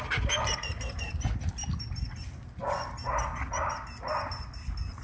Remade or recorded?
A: recorded